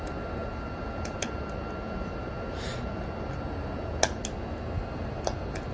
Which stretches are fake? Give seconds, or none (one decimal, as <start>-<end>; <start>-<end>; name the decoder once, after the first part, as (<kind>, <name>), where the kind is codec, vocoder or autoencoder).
none

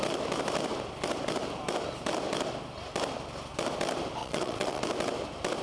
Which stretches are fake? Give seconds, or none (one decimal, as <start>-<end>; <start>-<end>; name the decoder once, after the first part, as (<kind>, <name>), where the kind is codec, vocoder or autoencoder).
4.2-4.8 (vocoder, WaveNeXt)

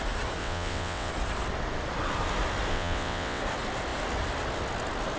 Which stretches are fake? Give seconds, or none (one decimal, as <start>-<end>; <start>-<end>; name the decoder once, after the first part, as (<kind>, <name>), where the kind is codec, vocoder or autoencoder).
0.4-1.1 (vocoder, WaveNeXt); 2.7-3.4

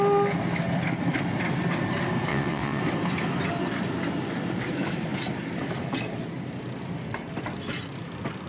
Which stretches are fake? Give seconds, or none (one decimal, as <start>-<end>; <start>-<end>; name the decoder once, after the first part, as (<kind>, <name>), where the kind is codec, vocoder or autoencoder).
2.3-2.8 (vocoder, WaveNeXt)

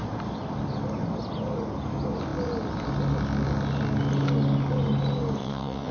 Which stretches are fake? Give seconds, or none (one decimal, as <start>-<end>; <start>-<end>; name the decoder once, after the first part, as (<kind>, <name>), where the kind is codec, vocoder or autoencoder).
5.4-5.9 (vocoder, WaveNeXt)

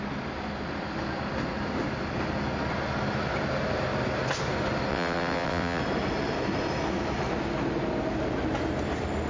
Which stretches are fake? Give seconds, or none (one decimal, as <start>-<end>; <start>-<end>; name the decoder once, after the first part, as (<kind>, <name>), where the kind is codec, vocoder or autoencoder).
4.9-5.8 (vocoder, WaveNeXt)